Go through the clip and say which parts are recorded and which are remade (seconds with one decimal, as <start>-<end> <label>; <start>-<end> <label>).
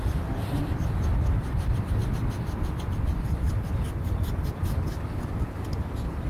0.0-2.0 remade; 2.0-5.8 recorded; 5.8-6.3 remade